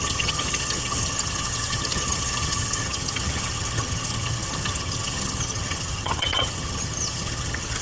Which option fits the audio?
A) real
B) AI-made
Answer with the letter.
B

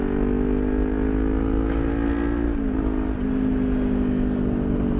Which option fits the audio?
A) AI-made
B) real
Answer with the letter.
B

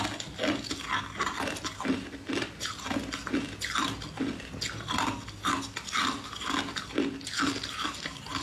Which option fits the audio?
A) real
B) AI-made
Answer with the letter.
A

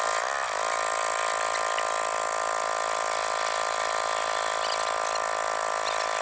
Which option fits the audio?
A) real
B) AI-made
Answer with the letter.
A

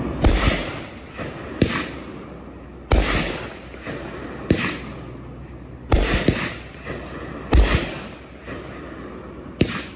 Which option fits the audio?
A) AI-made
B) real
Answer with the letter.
B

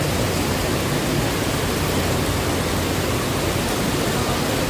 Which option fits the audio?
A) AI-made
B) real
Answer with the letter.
B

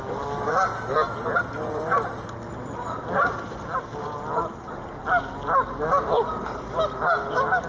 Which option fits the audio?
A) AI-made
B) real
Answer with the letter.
B